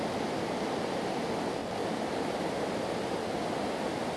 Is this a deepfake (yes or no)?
no